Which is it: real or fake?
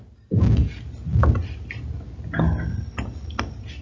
real